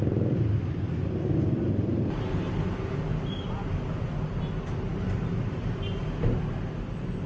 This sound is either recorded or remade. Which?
recorded